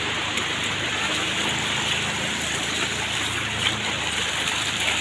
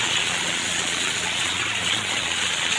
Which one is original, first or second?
first